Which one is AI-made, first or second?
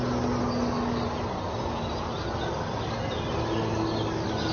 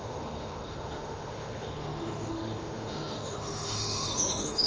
second